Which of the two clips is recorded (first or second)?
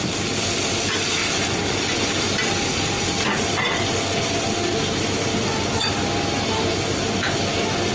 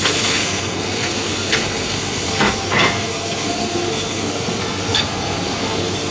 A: first